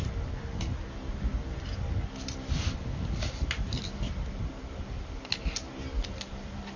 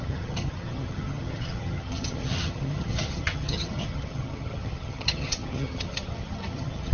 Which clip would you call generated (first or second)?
second